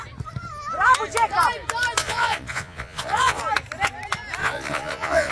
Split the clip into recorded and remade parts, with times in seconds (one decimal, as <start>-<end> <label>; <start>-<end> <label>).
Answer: 0.0-2.0 recorded; 2.0-3.4 remade; 3.4-4.4 recorded; 4.4-5.3 remade